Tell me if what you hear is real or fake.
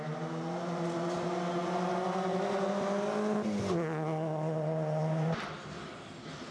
real